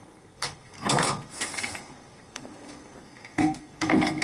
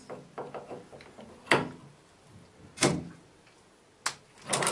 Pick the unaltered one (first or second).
second